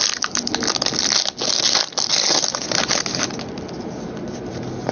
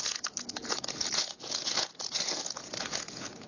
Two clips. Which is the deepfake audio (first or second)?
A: second